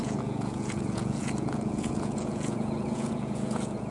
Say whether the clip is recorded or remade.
remade